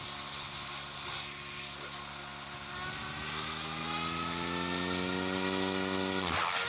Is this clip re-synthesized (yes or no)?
no